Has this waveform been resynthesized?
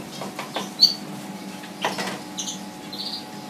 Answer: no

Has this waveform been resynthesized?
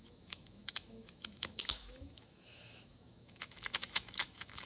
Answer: yes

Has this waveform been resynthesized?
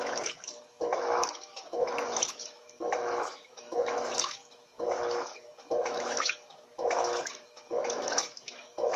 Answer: yes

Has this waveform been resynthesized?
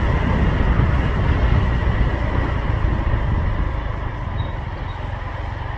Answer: no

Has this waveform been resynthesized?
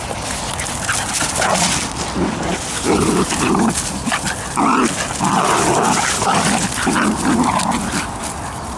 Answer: no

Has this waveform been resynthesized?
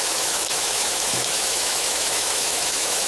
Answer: yes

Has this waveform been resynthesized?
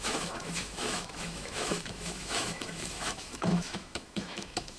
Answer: yes